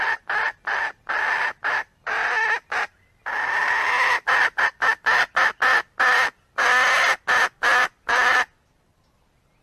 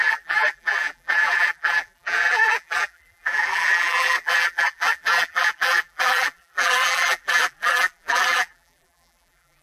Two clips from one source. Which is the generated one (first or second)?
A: second